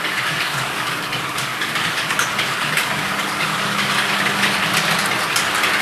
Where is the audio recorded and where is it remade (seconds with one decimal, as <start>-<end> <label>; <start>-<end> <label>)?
0.0-4.6 remade; 4.6-5.8 recorded